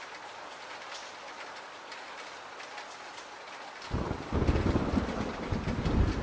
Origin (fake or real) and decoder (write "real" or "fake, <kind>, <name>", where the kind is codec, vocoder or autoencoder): real